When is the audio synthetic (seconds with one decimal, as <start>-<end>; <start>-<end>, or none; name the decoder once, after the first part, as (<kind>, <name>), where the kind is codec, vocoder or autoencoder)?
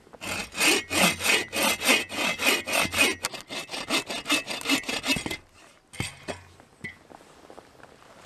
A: none